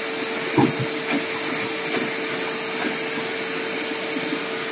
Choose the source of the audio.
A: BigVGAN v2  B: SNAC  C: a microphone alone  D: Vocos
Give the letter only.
C